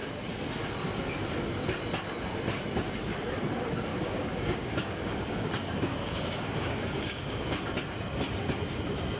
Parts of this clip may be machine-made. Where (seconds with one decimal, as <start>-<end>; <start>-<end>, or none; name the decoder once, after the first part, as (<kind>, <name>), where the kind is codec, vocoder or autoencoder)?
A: 3.9-7.6 (codec, DAC)